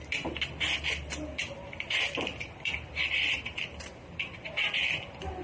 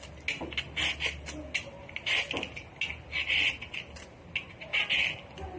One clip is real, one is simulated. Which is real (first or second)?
second